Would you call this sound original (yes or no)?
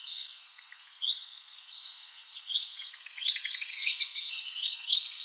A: no